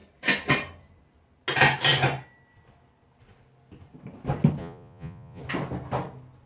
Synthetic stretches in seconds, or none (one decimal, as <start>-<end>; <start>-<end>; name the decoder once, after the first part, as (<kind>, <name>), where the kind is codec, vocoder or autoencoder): 4.6-5.4 (vocoder, Vocos)